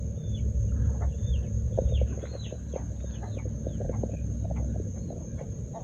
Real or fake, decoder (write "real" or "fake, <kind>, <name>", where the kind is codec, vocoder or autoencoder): real